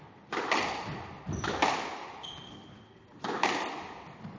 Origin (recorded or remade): recorded